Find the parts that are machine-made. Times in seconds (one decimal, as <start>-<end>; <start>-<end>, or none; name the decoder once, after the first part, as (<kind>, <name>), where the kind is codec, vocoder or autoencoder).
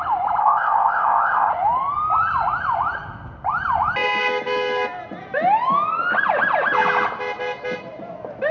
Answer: 0.4-1.5 (codec, ZipCodec)